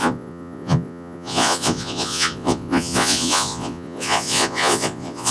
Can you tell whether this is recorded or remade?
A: remade